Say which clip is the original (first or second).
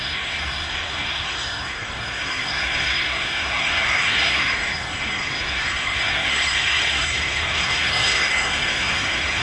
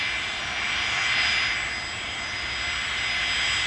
second